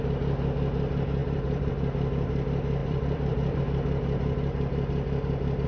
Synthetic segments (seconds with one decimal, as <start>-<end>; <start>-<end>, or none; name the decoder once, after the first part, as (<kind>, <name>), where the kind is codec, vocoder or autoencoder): 1.2-1.7 (vocoder, BigVGAN v2); 2.8-3.6